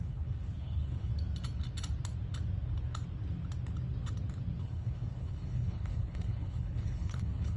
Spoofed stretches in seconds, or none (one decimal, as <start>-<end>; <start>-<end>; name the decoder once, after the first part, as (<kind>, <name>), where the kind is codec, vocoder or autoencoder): 0.0-1.1 (codec, HILCodec); 4.6-7.6